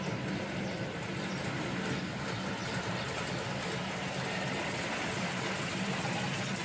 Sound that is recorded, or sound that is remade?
recorded